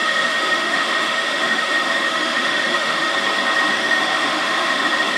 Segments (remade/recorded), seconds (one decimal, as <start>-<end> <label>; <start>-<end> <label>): 0.0-3.1 remade; 3.1-3.7 recorded; 3.7-5.2 remade

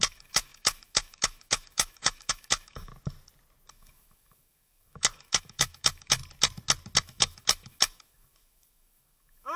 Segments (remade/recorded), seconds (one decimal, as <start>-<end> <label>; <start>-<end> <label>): 0.0-2.9 remade; 2.9-3.7 recorded; 3.7-6.2 remade; 6.2-7.0 recorded; 7.0-9.6 remade

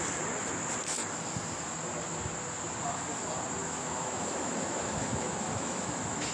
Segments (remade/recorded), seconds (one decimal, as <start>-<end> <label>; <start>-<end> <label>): 0.0-3.6 recorded; 3.6-6.3 remade

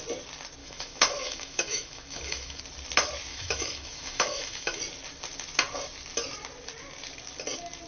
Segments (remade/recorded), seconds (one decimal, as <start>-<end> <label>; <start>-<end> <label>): 0.0-0.6 recorded; 0.6-2.6 remade; 2.6-3.3 recorded; 3.3-4.8 remade; 4.8-7.9 recorded

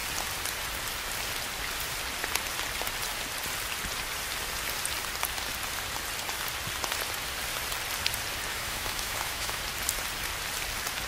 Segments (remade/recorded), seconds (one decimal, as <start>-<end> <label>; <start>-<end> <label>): 0.0-8.5 recorded; 8.5-9.6 remade; 9.6-11.1 recorded

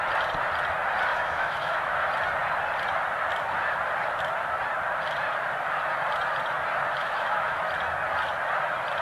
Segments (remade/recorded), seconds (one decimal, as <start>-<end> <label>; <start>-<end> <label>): 0.0-1.1 recorded; 1.1-1.8 remade; 1.8-7.0 recorded; 7.0-7.6 remade; 7.6-9.0 recorded